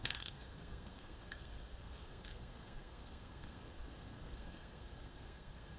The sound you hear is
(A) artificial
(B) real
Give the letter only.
A